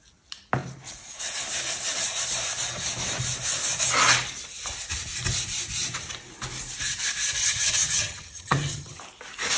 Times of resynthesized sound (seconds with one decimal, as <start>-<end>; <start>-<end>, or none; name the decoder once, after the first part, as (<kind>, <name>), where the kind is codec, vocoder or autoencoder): 7.4-9.0 (vocoder, HiFi-GAN)